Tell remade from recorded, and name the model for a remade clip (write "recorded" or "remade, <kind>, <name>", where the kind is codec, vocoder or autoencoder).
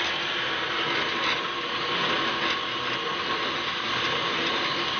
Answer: recorded